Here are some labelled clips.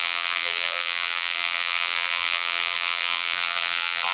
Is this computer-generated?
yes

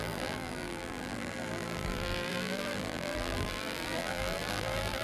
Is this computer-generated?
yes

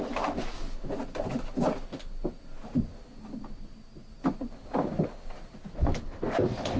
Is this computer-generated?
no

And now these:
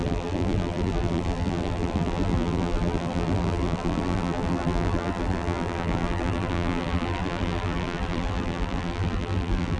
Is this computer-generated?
yes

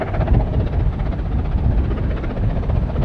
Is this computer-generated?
no